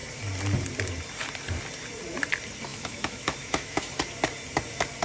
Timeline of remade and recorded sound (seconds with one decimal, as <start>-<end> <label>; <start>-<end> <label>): 0.0-2.7 recorded; 2.7-3.8 remade; 3.8-5.0 recorded